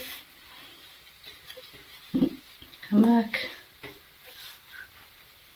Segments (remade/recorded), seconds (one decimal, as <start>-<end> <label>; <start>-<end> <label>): 0.0-5.6 recorded